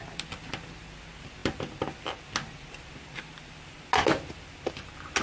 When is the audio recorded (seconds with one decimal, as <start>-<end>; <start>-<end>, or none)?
0.0-5.2